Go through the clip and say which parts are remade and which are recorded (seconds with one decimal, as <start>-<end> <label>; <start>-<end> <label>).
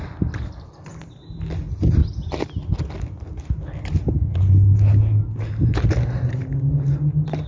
0.0-7.5 recorded